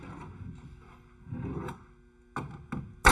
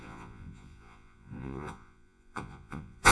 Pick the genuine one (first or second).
first